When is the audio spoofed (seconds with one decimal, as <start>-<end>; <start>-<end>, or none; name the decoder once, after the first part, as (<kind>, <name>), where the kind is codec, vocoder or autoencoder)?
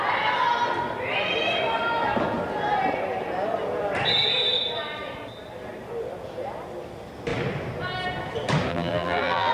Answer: 8.7-9.5 (vocoder, BigVGAN v2)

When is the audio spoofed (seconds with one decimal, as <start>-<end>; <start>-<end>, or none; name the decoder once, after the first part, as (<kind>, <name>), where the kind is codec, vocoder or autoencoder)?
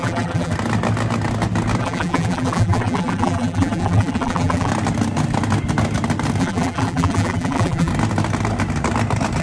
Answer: 0.0-0.5 (vocoder, BigVGAN v2); 1.8-4.7; 6.4-7.9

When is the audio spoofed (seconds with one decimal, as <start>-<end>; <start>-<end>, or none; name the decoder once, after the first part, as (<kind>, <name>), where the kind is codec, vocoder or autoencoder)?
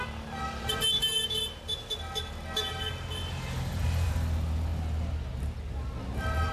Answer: none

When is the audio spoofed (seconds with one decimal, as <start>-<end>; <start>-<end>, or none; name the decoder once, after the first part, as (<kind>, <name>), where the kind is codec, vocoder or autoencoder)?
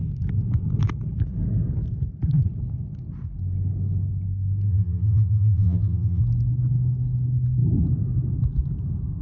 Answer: 4.7-6.2 (vocoder, BigVGAN v2)